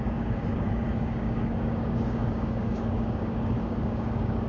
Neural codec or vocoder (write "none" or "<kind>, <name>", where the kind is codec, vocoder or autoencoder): codec, DAC